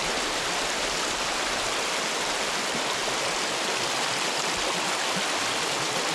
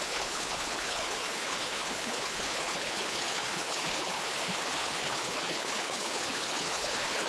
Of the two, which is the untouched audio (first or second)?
first